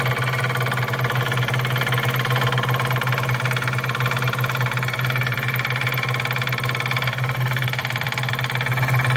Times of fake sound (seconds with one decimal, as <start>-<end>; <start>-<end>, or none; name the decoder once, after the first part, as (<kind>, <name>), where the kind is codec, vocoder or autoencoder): 7.8-8.3 (vocoder, BigVGAN v2)